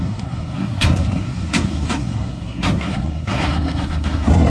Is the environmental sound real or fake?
fake